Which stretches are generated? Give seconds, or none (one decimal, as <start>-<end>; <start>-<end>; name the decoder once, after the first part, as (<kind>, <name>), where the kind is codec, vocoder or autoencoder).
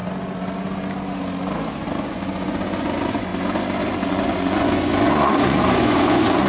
1.7-3.3 (vocoder, Vocos); 4.1-6.5